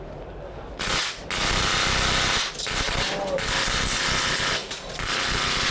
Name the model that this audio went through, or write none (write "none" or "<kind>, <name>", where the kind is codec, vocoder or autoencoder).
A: none